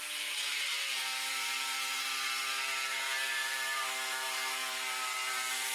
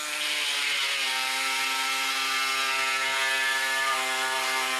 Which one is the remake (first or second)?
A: first